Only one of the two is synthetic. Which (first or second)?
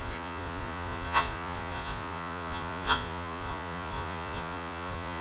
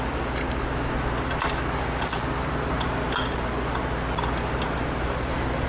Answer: first